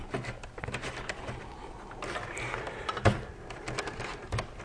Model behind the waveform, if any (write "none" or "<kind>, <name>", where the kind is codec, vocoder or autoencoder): none